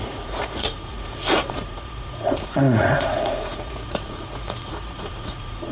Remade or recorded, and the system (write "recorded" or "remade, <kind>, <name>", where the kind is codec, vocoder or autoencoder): remade, vocoder, Vocos